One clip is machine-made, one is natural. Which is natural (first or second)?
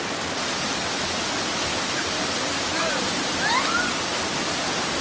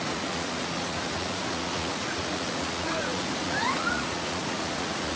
first